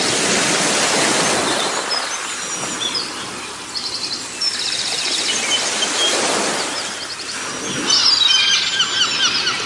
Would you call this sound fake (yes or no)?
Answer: no